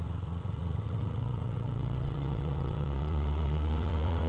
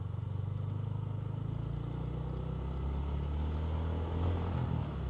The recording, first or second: second